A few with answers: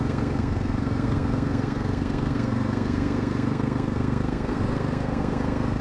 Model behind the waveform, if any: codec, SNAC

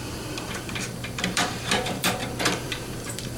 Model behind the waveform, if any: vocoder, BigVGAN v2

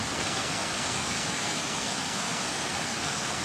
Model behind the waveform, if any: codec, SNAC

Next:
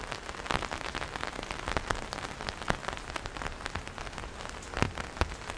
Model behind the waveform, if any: none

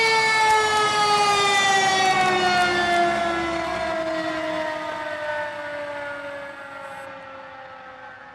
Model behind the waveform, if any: none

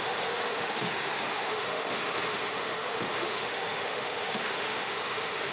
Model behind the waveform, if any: autoencoder, DAC-VAE